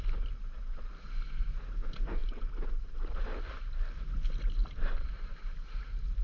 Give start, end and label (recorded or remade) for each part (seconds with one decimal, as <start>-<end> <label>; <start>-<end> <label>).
0.0-2.2 recorded; 2.2-2.9 remade; 2.9-4.6 recorded; 4.6-6.2 remade